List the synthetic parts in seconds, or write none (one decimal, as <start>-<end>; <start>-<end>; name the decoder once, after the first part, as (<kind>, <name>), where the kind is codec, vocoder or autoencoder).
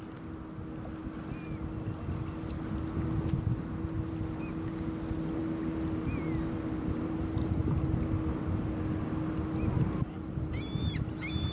none